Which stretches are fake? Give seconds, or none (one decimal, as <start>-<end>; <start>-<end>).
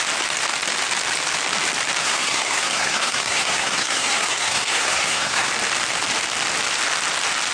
2.0-5.5